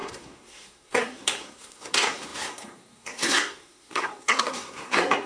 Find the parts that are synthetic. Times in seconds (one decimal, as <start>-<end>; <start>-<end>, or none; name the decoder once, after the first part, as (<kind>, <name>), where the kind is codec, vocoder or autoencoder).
0.0-5.3 (codec, SNAC)